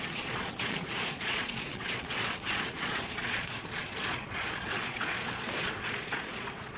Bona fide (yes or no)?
no